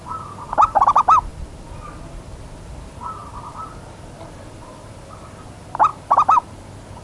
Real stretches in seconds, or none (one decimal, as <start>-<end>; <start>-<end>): 0.0-7.0